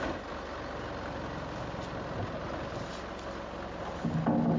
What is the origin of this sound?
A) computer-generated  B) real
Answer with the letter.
B